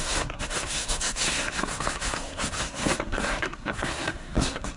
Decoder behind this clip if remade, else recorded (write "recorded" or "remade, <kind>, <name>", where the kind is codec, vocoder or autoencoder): remade, codec, SNAC